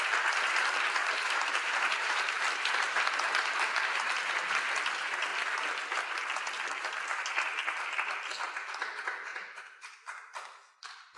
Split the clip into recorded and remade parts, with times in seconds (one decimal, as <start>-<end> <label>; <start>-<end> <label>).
0.0-1.0 recorded; 1.0-3.0 remade; 3.0-9.3 recorded; 9.3-10.0 remade; 10.0-11.2 recorded

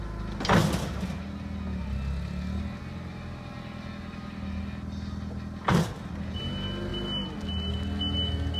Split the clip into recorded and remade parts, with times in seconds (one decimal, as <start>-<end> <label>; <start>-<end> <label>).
0.0-8.6 recorded

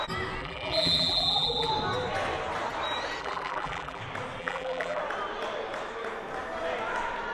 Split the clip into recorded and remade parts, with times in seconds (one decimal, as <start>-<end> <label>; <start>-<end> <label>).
0.0-0.4 recorded; 0.4-1.7 remade; 1.7-3.2 recorded; 3.2-4.0 remade; 4.0-4.4 recorded; 4.4-5.0 remade; 5.0-7.3 recorded

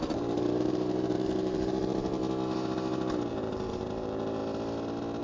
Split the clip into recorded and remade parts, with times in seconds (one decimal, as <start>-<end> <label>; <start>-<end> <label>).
0.0-2.2 remade; 2.2-3.3 recorded; 3.3-4.4 remade; 4.4-5.2 recorded